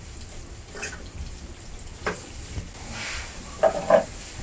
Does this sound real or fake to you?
real